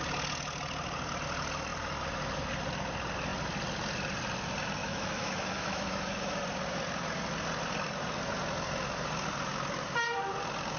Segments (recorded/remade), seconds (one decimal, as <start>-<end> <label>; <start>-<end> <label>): 0.0-4.8 recorded; 4.8-6.4 remade; 6.4-10.8 recorded